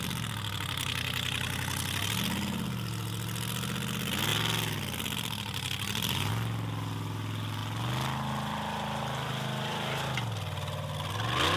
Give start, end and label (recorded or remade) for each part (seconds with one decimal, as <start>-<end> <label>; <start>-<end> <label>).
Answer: 0.0-11.6 recorded